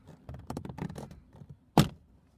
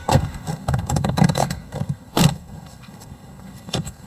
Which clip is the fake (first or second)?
second